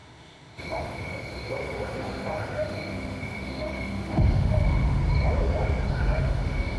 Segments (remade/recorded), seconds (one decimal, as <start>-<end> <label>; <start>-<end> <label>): 0.0-5.0 remade; 5.0-5.9 recorded; 5.9-6.8 remade